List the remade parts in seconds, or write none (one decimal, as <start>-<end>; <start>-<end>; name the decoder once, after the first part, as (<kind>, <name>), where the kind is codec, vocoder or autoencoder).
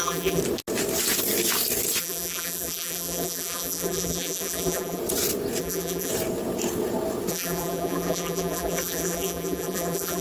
0.0-0.4 (vocoder, BigVGAN v2); 2.0-5.0; 5.6-6.1; 7.3-10.2